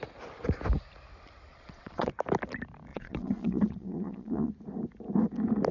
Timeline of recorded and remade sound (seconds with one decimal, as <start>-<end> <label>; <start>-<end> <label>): 0.0-1.5 recorded; 1.5-2.1 remade; 2.1-2.9 recorded; 2.9-4.5 remade; 4.5-5.7 recorded